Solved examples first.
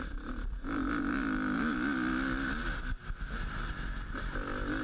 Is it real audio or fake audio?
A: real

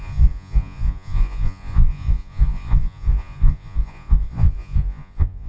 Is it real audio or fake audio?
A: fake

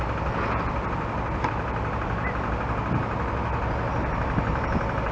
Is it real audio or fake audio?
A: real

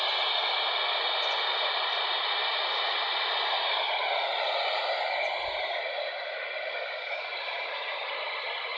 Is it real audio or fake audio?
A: real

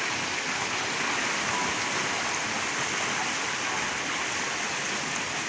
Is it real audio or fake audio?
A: real